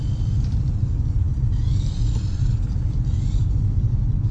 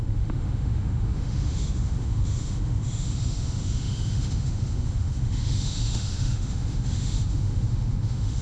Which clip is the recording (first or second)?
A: first